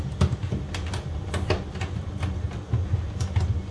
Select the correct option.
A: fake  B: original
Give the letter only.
B